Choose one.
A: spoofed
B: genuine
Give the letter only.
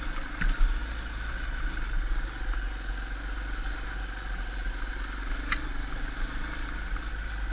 B